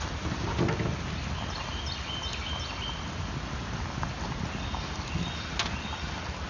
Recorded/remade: recorded